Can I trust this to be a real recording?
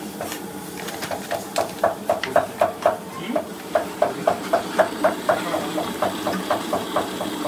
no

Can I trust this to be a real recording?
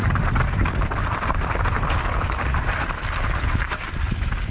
no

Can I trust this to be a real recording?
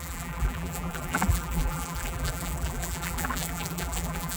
no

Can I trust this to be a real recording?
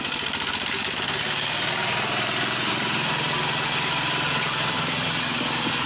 no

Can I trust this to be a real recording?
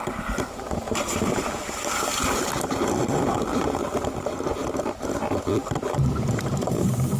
no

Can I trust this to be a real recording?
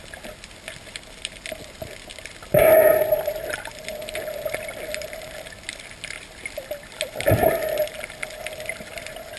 yes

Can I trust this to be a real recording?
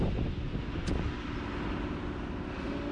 yes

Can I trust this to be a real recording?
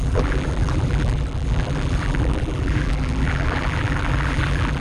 no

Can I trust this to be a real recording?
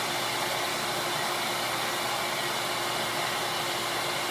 yes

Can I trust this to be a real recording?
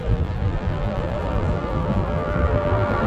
no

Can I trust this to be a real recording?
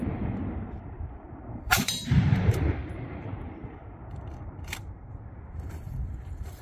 no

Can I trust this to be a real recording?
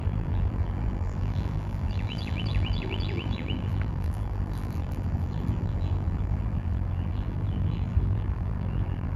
no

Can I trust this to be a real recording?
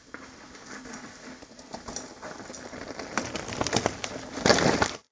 yes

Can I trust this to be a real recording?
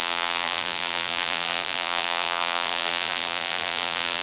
no